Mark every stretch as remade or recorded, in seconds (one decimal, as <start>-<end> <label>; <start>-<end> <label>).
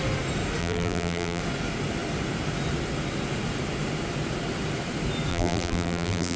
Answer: 0.0-0.6 recorded; 0.6-1.4 remade; 1.4-5.3 recorded; 5.3-6.4 remade